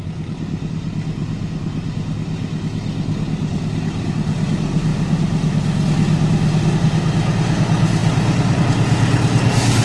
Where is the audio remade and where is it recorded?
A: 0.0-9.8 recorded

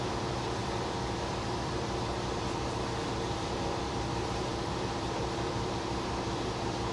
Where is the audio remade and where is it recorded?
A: 0.0-6.9 remade

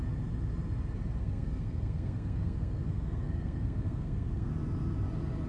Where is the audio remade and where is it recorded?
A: 0.0-1.2 recorded; 1.2-4.5 remade; 4.5-5.5 recorded

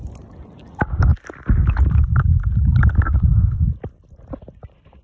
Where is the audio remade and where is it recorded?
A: 0.0-5.0 recorded

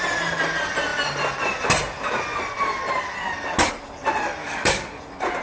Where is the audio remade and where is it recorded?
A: 0.0-4.4 recorded; 4.4-5.0 remade; 5.0-5.4 recorded

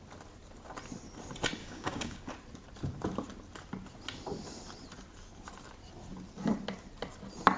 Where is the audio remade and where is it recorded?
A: 0.0-1.6 recorded; 1.6-2.3 remade; 2.3-7.6 recorded